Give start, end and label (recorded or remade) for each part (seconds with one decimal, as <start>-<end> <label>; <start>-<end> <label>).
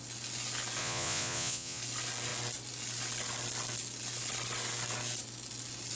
0.0-0.8 recorded; 0.8-1.8 remade; 1.8-6.0 recorded